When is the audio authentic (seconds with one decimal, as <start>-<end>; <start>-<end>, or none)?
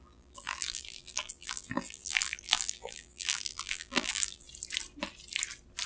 4.5-5.9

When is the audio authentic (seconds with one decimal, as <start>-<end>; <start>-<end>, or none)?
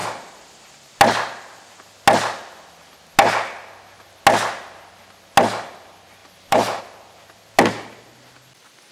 0.0-6.2; 6.8-8.9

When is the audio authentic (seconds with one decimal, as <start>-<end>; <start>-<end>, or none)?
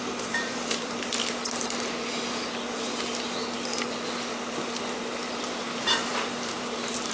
1.2-5.3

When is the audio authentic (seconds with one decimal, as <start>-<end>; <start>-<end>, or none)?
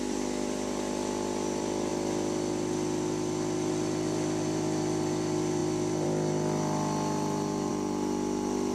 1.9-3.7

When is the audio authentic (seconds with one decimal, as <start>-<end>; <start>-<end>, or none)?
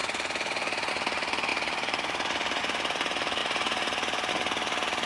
0.0-0.9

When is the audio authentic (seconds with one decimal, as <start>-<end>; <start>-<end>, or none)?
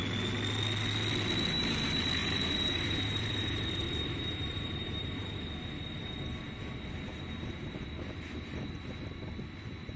0.0-2.2; 5.5-7.1; 8.0-10.0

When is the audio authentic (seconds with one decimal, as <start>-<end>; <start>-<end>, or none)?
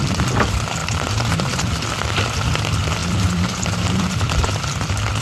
0.0-0.8; 1.5-3.0; 4.6-5.2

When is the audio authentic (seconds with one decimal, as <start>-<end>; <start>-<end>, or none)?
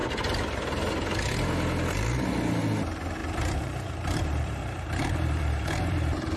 0.0-3.2